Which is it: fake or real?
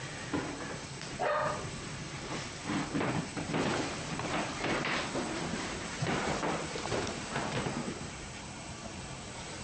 fake